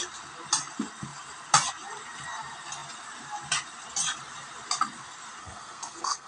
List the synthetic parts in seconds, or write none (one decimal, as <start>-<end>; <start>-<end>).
5.4-6.3